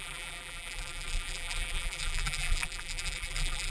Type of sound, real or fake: fake